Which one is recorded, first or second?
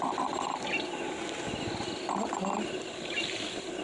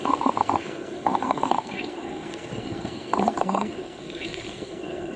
first